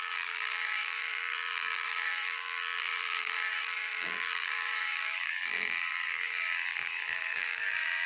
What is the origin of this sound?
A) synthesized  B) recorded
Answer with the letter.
A